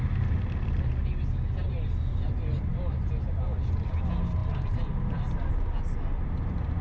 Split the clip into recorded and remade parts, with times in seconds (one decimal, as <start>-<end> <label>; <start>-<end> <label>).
0.0-6.8 recorded